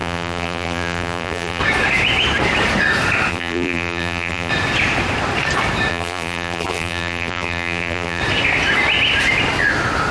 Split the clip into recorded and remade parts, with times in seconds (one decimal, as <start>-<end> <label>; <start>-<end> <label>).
0.0-1.6 remade; 1.6-3.3 recorded; 3.3-4.5 remade; 4.5-5.9 recorded; 5.9-8.2 remade; 8.2-10.1 recorded